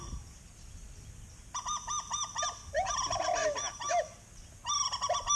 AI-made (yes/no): no